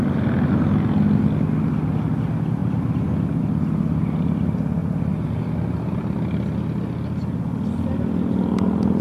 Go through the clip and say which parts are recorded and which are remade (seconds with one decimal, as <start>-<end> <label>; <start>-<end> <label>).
0.0-9.0 recorded